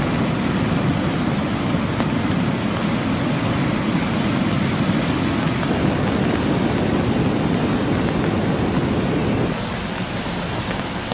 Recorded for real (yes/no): yes